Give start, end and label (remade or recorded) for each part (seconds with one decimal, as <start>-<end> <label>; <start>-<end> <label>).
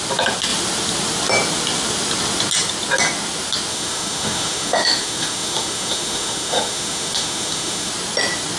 0.0-3.7 recorded; 3.7-7.9 remade; 7.9-8.6 recorded